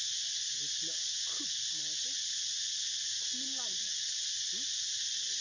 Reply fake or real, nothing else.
real